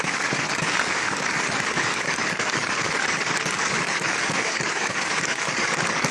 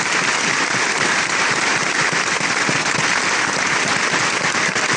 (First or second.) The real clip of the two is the second